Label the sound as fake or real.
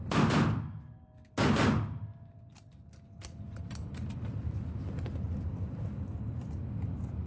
real